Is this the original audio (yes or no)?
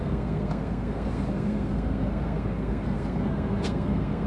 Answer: no